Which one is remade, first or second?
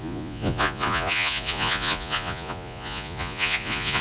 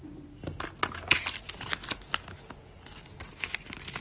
first